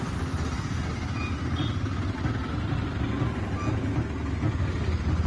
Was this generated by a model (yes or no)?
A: no